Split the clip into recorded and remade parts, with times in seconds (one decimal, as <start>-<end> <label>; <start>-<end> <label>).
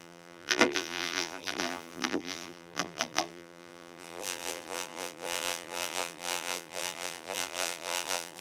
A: 0.0-8.4 remade